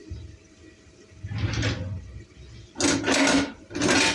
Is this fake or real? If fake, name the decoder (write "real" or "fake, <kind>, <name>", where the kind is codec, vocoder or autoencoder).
real